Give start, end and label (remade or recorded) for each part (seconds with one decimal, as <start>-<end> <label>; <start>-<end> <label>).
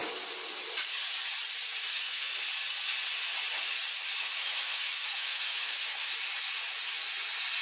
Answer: 0.0-1.9 recorded; 1.9-2.3 remade; 2.3-4.2 recorded; 4.2-6.1 remade; 6.1-7.6 recorded